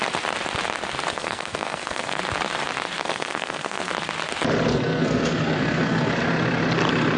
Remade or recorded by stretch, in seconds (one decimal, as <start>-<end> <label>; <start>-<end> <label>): 0.0-1.1 recorded; 1.1-2.2 remade; 2.2-3.0 recorded; 3.0-3.9 remade; 3.9-4.7 recorded; 4.7-6.1 remade; 6.1-7.2 recorded